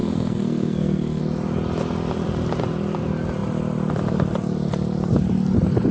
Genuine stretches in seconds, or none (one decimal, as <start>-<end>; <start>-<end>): 1.2-5.9